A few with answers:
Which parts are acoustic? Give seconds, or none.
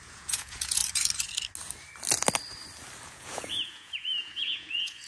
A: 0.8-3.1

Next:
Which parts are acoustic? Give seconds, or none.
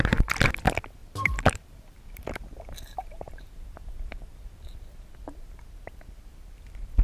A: 0.0-1.0; 4.7-7.0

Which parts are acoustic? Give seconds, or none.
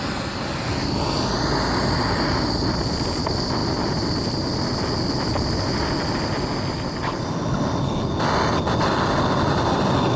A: 0.0-10.2